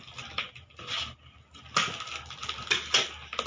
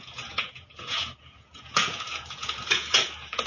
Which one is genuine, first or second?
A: first